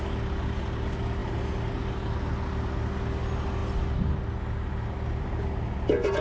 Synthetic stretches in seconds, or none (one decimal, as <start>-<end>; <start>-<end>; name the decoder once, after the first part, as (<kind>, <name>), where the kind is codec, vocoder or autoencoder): none